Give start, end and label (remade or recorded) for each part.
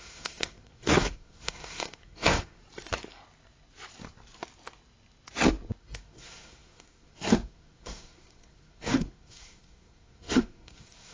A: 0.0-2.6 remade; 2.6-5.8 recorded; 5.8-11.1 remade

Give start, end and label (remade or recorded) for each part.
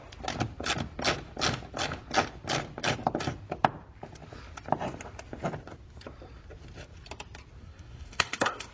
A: 0.0-7.6 recorded; 7.6-8.7 remade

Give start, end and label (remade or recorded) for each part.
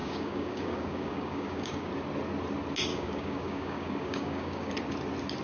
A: 0.0-1.9 remade; 1.9-2.9 recorded; 2.9-4.7 remade; 4.7-5.4 recorded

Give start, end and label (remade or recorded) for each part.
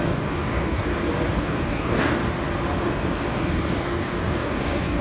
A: 0.0-0.9 remade; 0.9-1.4 recorded; 1.4-2.2 remade; 2.2-2.8 recorded; 2.8-5.0 remade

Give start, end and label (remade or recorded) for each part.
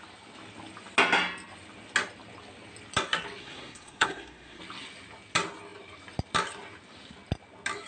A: 0.0-3.4 recorded; 3.4-4.6 remade; 4.6-7.9 recorded